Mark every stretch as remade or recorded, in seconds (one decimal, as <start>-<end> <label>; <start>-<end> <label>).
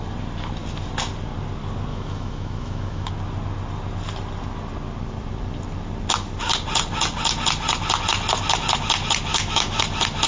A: 0.0-1.9 recorded; 1.9-3.1 remade; 3.1-9.3 recorded; 9.3-9.8 remade; 9.8-10.3 recorded